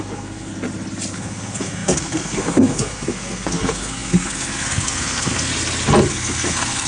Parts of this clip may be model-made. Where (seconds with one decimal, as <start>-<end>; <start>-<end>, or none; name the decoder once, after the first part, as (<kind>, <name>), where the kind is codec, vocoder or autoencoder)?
0.0-0.5 (codec, SNAC); 1.1-5.5; 6.1-6.9